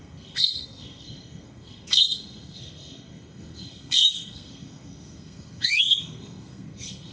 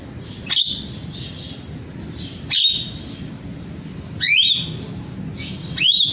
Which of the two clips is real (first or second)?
second